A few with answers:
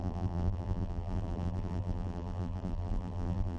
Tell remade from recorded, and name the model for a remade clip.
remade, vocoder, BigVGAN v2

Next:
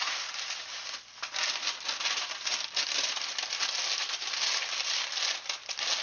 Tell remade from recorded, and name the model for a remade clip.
recorded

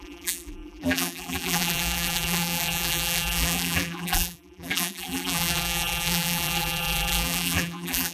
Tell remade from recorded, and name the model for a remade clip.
remade, vocoder, BigVGAN v2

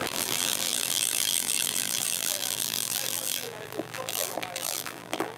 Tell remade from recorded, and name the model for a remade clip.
remade, vocoder, BigVGAN v2